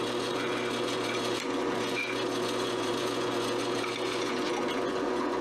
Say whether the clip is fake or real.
fake